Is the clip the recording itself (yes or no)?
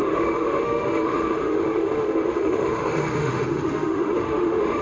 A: no